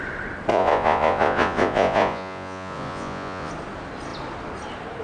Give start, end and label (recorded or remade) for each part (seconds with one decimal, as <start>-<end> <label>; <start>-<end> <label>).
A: 0.0-0.5 recorded; 0.5-3.5 remade; 3.5-5.0 recorded